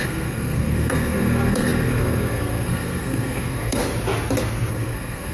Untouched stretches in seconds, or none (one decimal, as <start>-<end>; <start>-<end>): 3.8-4.7